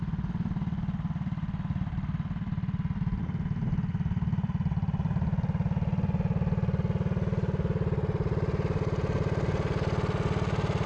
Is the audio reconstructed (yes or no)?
no